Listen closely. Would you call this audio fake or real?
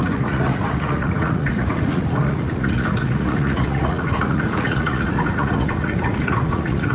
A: fake